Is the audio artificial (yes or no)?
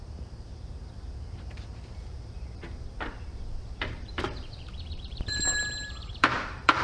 yes